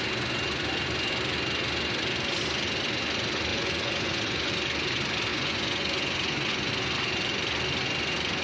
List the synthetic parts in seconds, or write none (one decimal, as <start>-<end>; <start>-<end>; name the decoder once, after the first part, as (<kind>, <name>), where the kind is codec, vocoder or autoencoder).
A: 3.5-4.5 (vocoder, Vocos); 5.3-6.7